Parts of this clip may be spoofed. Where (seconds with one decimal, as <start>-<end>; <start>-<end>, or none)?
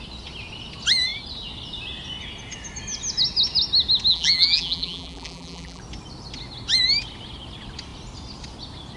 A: 4.1-5.8